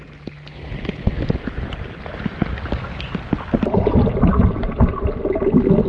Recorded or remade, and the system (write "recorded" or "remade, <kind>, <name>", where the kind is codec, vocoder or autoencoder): recorded